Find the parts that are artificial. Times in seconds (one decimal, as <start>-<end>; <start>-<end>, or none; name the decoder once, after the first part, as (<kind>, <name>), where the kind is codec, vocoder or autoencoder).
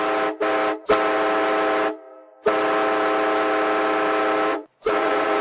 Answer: 4.5-5.4 (vocoder, Vocos)